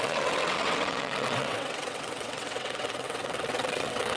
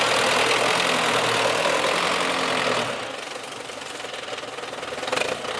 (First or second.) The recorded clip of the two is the second